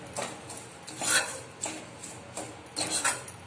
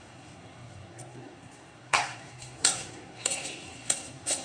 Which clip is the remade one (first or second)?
second